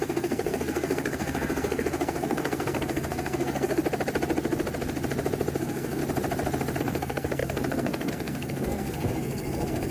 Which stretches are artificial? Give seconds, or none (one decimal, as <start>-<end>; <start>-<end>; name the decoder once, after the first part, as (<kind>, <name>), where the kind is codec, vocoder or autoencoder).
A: 0.0-3.8 (codec, SNAC); 5.6-6.0; 6.8-9.9